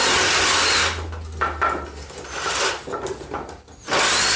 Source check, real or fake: real